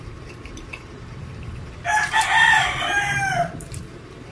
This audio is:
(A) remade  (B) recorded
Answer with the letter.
A